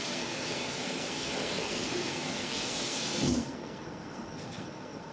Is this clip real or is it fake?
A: fake